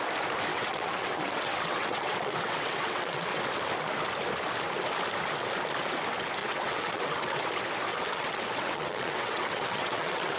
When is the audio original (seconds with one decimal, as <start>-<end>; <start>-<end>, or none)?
0.0-0.5; 3.4-6.4; 7.4-7.9